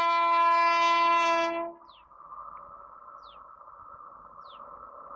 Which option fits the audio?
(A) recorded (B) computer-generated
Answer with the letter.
A